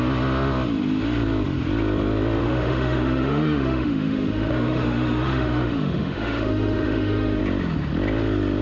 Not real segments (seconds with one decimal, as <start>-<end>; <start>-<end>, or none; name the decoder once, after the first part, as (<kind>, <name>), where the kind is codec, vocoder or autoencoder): 2.4-7.4 (autoencoder, DAC-VAE)